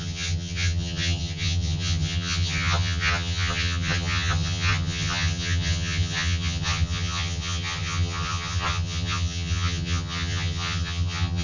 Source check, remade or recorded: remade